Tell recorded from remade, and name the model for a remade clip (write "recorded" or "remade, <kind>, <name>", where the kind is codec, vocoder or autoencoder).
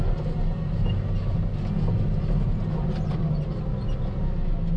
recorded